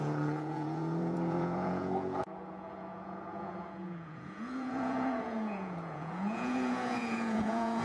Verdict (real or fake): fake